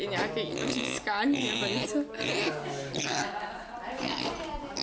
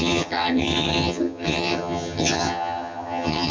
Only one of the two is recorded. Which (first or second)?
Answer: first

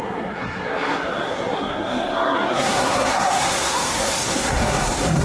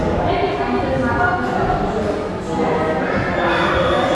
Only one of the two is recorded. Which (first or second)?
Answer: second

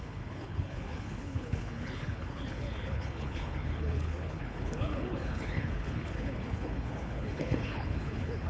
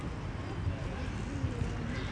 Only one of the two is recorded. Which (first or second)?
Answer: second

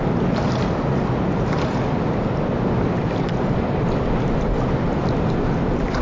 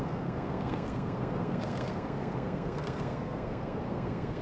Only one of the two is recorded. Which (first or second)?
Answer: first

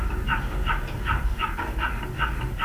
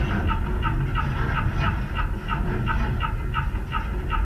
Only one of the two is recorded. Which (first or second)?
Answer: second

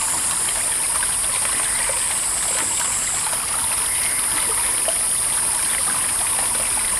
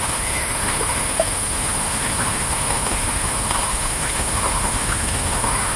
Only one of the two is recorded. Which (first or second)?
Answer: first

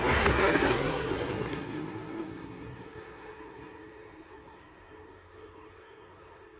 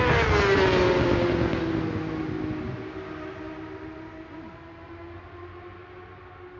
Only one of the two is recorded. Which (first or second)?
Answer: second